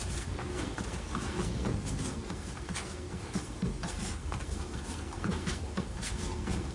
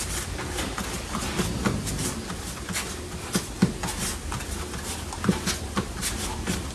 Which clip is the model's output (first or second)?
first